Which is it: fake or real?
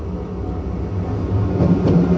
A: real